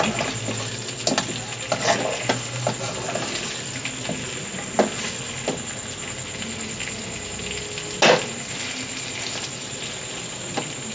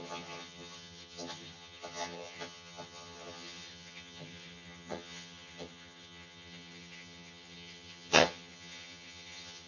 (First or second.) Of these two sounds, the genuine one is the first